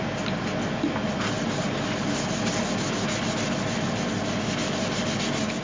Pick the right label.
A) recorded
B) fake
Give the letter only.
A